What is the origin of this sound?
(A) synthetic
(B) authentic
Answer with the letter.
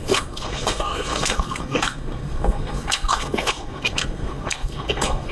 A